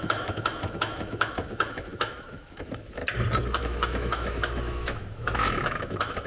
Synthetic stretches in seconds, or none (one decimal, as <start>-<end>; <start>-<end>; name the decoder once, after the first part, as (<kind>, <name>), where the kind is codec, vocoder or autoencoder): 0.0-3.0 (autoencoder, DAC-VAE); 3.6-6.3